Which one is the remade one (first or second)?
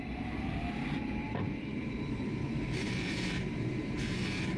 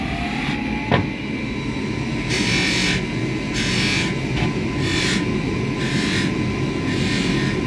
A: first